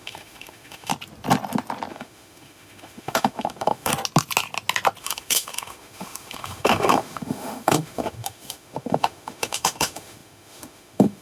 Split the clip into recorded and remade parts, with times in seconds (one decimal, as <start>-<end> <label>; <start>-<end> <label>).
0.0-0.9 remade; 0.9-1.9 recorded; 1.9-3.9 remade; 3.9-5.0 recorded; 5.0-11.2 remade